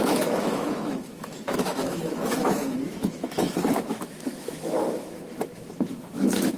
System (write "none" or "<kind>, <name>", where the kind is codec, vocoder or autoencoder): autoencoder, DAC-VAE